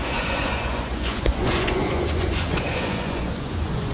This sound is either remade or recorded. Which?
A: remade